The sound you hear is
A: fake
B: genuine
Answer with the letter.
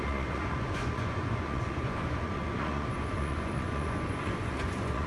A